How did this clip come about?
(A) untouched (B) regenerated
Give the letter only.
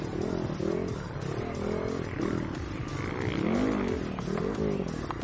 A